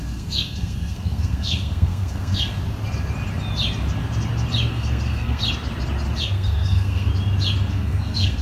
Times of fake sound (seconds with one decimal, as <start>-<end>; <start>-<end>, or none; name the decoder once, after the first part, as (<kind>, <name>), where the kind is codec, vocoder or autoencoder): 0.0-2.5 (codec, SNAC); 4.7-5.4; 6.2-7.1; 7.7-8.4